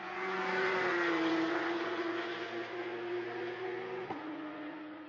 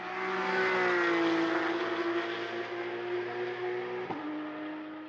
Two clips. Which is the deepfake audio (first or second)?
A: first